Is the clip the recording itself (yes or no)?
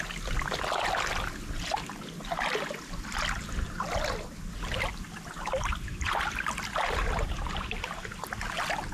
yes